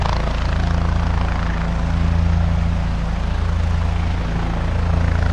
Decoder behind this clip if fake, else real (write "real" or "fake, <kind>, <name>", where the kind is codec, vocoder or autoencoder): real